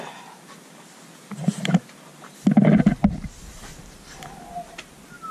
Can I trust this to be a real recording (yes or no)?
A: yes